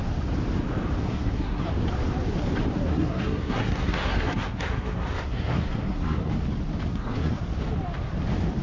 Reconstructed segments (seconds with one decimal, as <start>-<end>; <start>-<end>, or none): 1.0-1.7; 2.9-6.3; 6.9-7.4